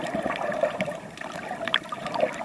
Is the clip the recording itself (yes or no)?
no